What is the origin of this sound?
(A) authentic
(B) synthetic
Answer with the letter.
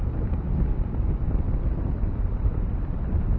A